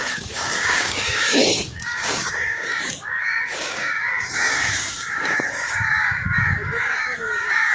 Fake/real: fake